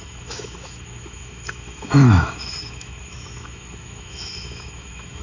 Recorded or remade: remade